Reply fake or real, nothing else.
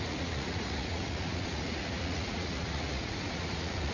fake